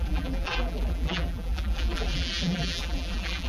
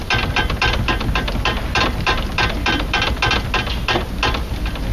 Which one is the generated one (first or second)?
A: first